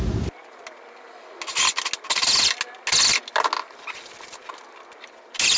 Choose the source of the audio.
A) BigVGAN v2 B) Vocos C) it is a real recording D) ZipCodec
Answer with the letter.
C